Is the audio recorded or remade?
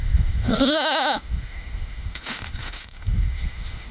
remade